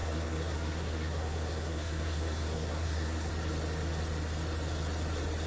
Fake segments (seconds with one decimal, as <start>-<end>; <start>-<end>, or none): 0.0-3.3